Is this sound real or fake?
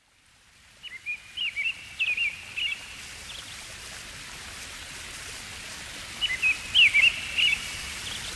real